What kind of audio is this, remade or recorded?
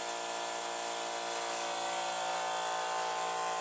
recorded